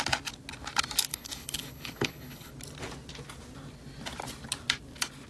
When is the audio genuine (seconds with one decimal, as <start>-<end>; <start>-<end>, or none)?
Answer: 0.0-1.1; 2.5-5.3